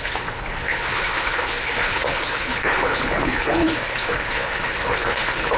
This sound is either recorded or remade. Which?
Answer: remade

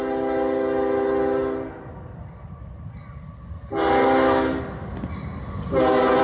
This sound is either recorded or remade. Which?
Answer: recorded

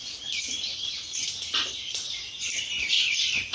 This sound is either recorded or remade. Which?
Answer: recorded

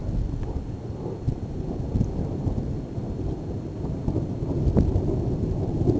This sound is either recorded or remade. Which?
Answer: recorded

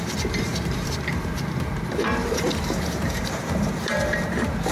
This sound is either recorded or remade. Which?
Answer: remade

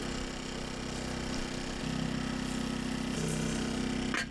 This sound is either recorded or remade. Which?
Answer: recorded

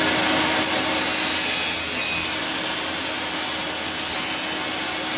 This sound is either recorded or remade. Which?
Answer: recorded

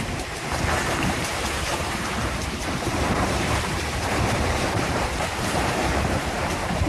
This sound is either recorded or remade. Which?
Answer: remade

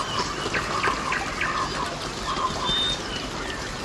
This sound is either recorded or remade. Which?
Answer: recorded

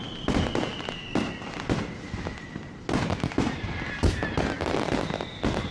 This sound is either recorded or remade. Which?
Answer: recorded